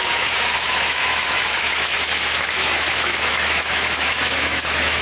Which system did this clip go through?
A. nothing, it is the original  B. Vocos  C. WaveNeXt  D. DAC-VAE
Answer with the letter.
D